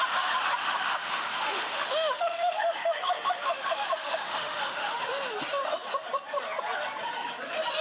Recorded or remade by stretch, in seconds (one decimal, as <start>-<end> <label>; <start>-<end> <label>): 0.0-0.6 recorded; 0.6-5.0 remade; 5.0-7.8 recorded